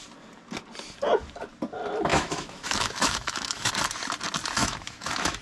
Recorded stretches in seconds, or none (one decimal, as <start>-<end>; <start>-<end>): 0.0-2.1; 3.7-4.6